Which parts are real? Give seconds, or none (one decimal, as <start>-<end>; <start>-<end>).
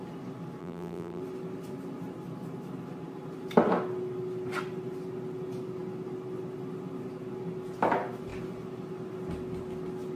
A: 0.0-0.6; 1.2-10.2